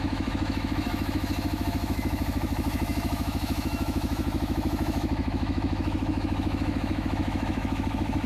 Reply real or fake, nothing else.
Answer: fake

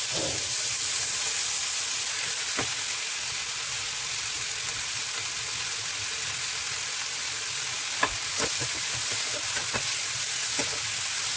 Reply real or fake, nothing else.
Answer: real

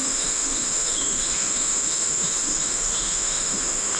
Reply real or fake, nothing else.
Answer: fake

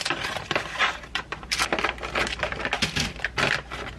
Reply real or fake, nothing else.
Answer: real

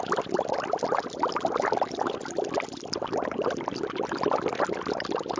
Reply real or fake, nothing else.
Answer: real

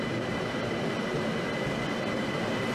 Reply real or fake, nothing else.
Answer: real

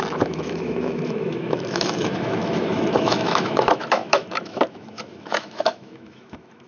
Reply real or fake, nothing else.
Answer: fake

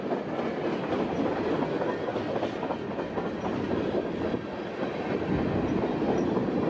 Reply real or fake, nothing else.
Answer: real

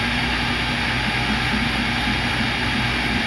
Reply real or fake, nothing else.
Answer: real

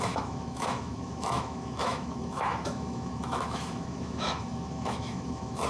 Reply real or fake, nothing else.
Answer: fake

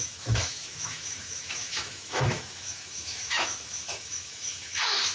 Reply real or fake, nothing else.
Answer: fake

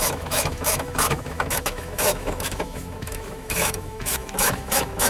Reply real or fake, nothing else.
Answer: fake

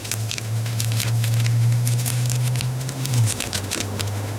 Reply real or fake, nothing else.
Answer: fake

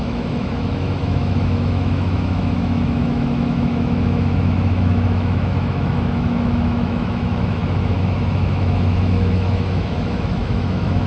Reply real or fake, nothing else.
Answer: fake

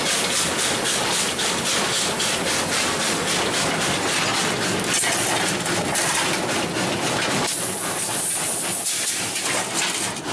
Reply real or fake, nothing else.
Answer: real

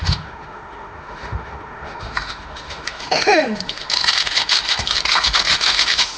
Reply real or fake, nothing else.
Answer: fake